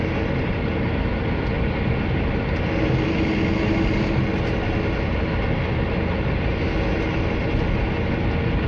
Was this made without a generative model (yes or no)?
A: yes